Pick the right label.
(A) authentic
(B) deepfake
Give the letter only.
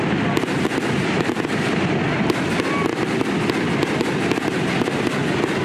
A